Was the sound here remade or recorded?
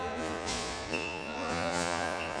remade